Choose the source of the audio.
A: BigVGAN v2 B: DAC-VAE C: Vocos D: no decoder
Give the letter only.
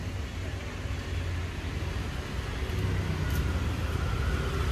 D